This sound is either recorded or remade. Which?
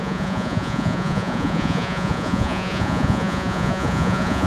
remade